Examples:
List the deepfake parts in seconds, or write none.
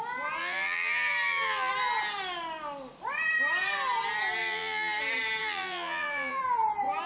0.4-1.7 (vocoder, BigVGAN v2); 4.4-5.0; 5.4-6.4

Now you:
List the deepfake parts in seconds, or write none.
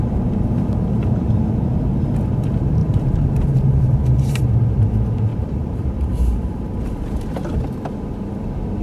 2.8-4.4 (vocoder, BigVGAN v2); 5.3-7.3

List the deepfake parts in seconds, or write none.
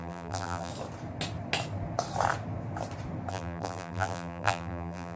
0.0-0.7 (vocoder, BigVGAN v2); 3.3-5.2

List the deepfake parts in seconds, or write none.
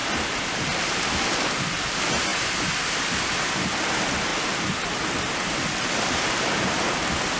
none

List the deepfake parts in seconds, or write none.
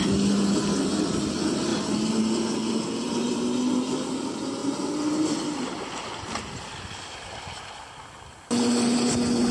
1.7-2.2 (vocoder, BigVGAN v2)